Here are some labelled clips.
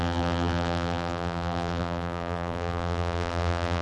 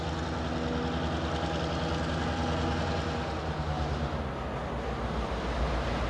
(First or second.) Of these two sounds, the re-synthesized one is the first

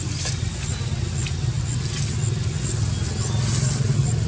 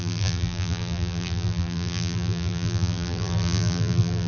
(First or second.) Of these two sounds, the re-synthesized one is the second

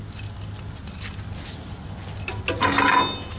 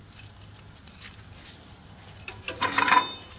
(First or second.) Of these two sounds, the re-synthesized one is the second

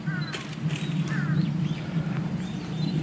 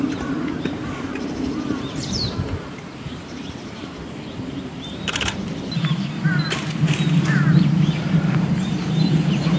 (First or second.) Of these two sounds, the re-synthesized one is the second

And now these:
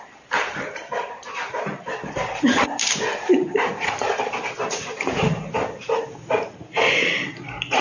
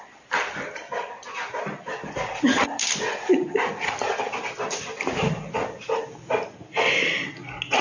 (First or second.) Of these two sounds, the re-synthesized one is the first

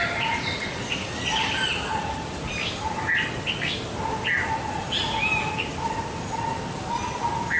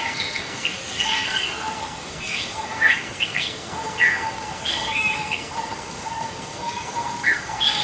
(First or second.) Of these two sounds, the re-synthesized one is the second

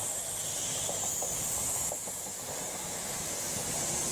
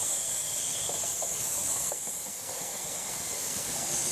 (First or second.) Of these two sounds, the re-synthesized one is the second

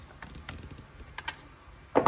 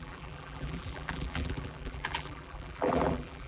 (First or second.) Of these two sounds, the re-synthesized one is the second